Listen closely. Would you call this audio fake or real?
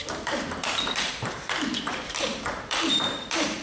fake